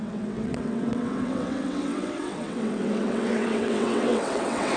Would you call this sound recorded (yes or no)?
no